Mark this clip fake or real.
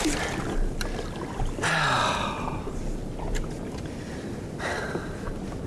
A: real